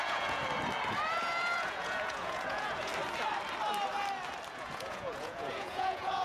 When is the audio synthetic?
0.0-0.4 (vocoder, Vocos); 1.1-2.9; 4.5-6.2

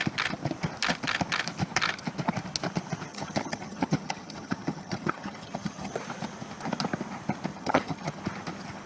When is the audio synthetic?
3.1-5.9 (vocoder, HiFi-GAN); 7.5-8.2